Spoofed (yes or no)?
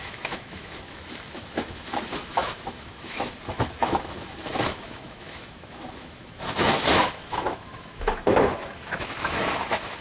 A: yes